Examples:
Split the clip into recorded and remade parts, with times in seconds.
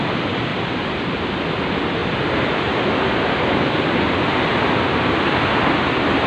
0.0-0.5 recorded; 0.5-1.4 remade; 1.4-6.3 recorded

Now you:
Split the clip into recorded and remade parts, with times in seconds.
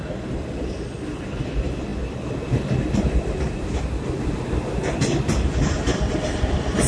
0.0-6.9 recorded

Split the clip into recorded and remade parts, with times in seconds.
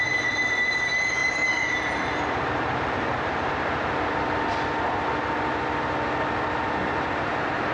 0.0-1.2 recorded; 1.2-3.5 remade; 3.5-7.7 recorded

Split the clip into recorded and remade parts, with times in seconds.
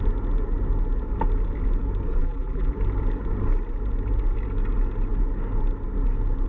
0.0-2.2 recorded; 2.2-2.7 remade; 2.7-6.5 recorded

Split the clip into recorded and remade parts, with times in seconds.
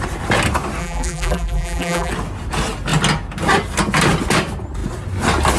0.0-0.8 recorded; 0.8-2.1 remade; 2.1-5.6 recorded